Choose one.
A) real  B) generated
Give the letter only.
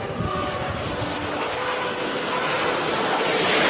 A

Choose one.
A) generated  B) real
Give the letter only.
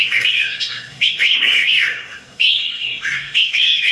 A